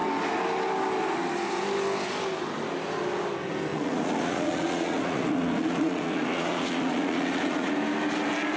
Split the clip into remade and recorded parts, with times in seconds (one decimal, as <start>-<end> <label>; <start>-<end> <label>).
0.0-3.7 recorded; 3.7-7.7 remade; 7.7-8.6 recorded